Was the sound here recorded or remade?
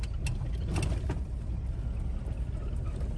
recorded